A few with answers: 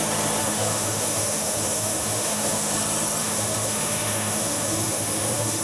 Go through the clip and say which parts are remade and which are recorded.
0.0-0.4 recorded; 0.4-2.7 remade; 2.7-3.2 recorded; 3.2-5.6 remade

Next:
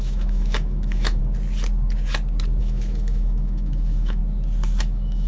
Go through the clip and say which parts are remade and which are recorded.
0.0-1.2 remade; 1.2-2.6 recorded; 2.6-4.2 remade; 4.2-4.8 recorded; 4.8-5.3 remade

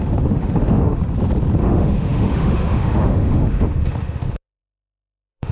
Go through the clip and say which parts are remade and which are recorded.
0.0-1.0 remade; 1.0-1.6 recorded; 1.6-5.5 remade